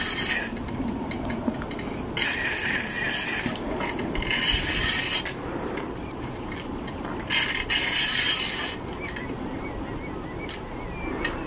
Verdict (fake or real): real